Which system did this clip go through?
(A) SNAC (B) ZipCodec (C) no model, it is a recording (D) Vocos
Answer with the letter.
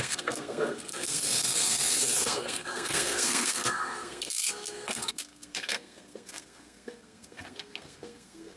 A